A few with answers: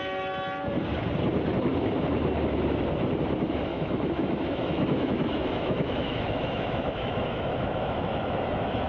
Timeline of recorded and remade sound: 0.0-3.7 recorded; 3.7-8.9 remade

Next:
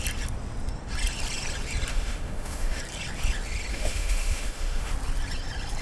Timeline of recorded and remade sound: 0.0-1.9 recorded; 1.9-2.8 remade; 2.8-3.7 recorded; 3.7-4.9 remade; 4.9-5.8 recorded

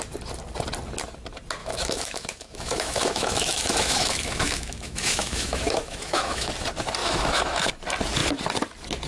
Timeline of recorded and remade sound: 0.0-1.6 recorded; 1.6-6.5 remade; 6.5-7.0 recorded; 7.0-7.7 remade; 7.7-9.1 recorded

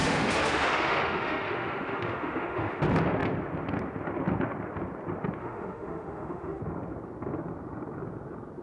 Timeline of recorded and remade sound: 0.0-2.8 remade; 2.8-5.4 recorded; 5.4-6.6 remade; 6.6-8.6 recorded

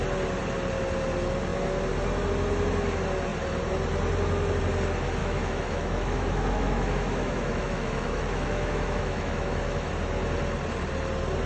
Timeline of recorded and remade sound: 0.0-5.2 recorded; 5.2-9.9 remade; 9.9-11.5 recorded